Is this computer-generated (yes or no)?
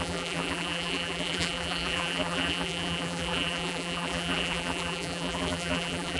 yes